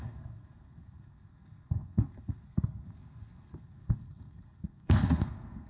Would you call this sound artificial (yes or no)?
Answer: yes